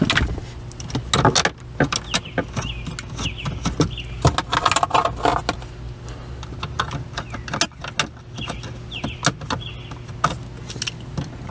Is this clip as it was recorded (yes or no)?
yes